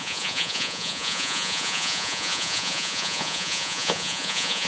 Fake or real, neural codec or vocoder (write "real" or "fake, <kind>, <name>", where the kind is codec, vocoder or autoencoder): fake, vocoder, Vocos